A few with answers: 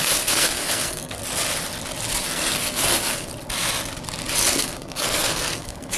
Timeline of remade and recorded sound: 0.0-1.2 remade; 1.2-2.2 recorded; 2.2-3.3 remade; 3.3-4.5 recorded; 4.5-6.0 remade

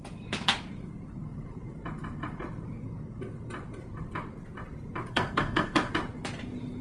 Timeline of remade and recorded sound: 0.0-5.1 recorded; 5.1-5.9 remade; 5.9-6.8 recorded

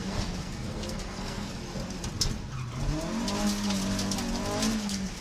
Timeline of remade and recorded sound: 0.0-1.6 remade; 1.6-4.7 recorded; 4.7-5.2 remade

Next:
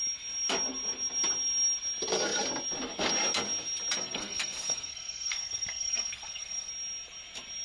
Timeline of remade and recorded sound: 0.0-4.0 recorded; 4.0-6.7 remade; 6.7-7.6 recorded

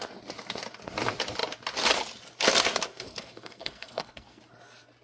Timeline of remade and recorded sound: 0.0-2.9 recorded; 2.9-4.4 remade; 4.4-5.0 recorded

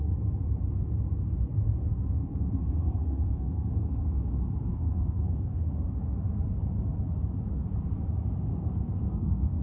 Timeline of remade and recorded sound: 0.0-1.8 recorded; 1.8-4.3 remade; 4.3-4.7 recorded; 4.7-5.7 remade; 5.7-8.5 recorded; 8.5-9.6 remade

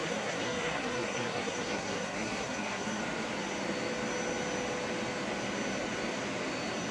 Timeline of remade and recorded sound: 0.0-3.0 remade; 3.0-6.9 recorded